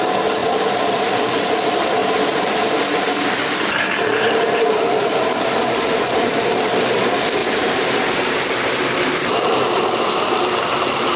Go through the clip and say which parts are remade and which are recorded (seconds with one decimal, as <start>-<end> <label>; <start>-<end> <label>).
0.0-0.4 recorded; 0.4-1.0 remade; 1.0-2.0 recorded; 2.0-6.4 remade; 6.4-7.4 recorded; 7.4-9.8 remade; 9.8-11.2 recorded